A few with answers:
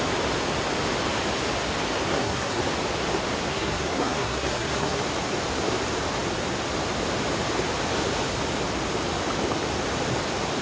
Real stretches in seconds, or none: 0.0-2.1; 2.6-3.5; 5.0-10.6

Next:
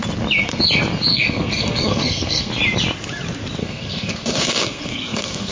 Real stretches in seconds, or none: 0.0-1.1; 2.5-3.6